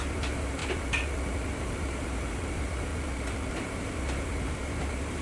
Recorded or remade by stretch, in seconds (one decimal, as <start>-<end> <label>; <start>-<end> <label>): 0.0-0.6 remade; 0.6-1.5 recorded; 1.5-2.9 remade; 2.9-3.5 recorded; 3.5-5.2 remade